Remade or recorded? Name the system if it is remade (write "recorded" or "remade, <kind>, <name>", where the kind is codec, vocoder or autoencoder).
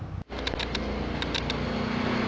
recorded